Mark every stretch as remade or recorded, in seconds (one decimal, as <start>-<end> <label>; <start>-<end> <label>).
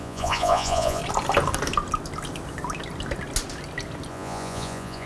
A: 0.0-1.0 remade; 1.0-4.1 recorded; 4.1-5.1 remade